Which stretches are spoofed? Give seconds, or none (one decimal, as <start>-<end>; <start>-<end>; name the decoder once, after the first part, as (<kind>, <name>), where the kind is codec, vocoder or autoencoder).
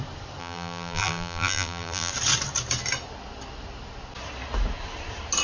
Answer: 0.4-2.1 (vocoder, BigVGAN v2)